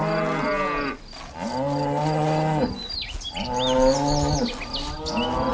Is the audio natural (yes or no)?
yes